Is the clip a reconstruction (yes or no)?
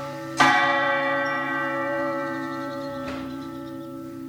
yes